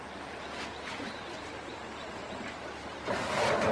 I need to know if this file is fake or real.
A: real